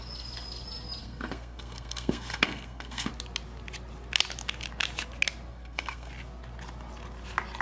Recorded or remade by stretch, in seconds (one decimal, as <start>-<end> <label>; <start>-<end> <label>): 0.0-1.0 recorded; 1.0-3.1 remade; 3.1-5.5 recorded; 5.5-6.1 remade; 6.1-7.6 recorded